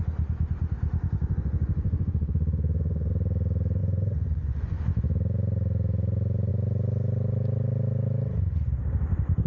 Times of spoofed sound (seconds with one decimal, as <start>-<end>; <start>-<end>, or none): 1.2-3.1; 3.8-4.8